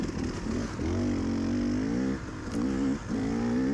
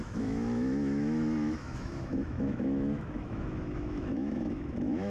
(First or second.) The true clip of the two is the first